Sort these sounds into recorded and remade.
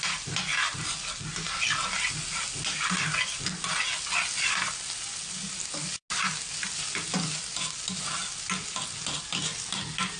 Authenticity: recorded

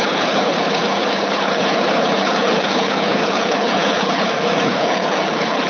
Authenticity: remade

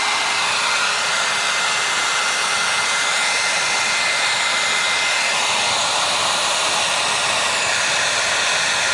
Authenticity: recorded